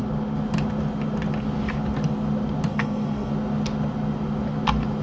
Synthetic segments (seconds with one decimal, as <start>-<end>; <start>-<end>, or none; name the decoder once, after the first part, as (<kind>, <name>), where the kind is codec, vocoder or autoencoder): 2.7-3.3 (codec, SNAC)